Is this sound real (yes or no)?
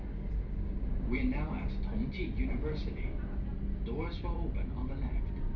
yes